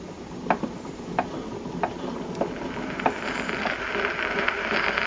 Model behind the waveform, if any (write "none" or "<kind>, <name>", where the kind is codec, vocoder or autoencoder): none